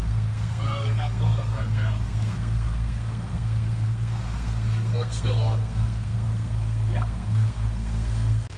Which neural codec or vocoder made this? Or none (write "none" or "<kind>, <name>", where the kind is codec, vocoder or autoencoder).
codec, SNAC